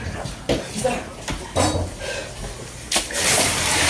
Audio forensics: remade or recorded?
recorded